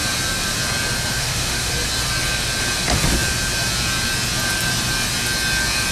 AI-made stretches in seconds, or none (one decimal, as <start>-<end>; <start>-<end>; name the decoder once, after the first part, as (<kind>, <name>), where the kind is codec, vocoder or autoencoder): 1.1-1.7 (autoencoder, DAC-VAE)

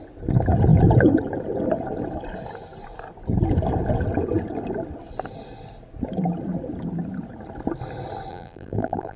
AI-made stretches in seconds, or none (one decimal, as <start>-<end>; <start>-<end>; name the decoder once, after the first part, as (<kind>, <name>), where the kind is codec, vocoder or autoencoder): 8.3-9.2 (vocoder, BigVGAN v2)

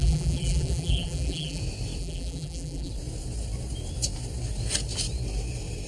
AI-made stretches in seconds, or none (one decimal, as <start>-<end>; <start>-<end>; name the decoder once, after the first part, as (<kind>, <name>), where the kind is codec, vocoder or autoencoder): 0.0-1.6 (vocoder, BigVGAN v2); 2.0-2.9